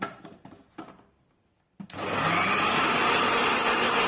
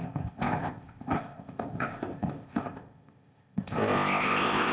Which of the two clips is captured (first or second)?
first